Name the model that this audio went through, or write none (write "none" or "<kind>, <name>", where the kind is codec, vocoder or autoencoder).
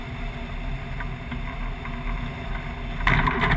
none